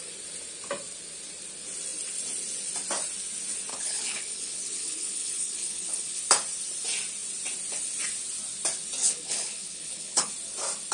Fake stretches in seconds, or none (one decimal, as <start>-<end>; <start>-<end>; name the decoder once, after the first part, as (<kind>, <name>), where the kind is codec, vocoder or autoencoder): 3.7-6.2 (codec, HILCodec); 9.0-10.3

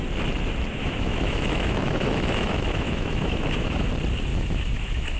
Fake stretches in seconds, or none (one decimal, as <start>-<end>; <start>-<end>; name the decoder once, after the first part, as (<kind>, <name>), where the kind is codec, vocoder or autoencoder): 0.8-3.9 (autoencoder, DAC-VAE); 4.3-5.2

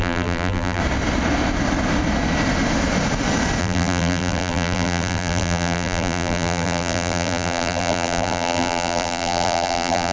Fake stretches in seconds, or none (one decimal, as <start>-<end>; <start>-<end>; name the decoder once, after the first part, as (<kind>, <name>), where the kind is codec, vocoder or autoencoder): 0.0-0.8 (vocoder, BigVGAN v2); 3.6-10.1

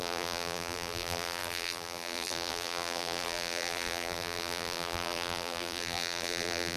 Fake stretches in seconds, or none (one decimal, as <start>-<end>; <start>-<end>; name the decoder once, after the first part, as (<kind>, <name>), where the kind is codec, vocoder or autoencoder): 0.0-6.8 (vocoder, BigVGAN v2)

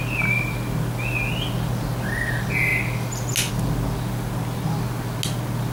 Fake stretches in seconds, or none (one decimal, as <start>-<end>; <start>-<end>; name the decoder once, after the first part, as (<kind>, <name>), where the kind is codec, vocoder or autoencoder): none

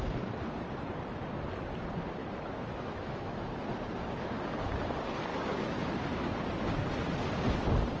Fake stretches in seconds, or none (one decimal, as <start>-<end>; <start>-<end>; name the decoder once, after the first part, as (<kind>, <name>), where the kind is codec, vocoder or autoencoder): 2.2-3.4 (autoencoder, DAC-VAE); 5.3-6.0